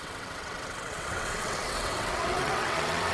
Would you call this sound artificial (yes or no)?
yes